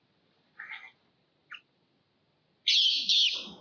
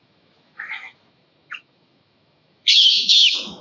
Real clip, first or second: first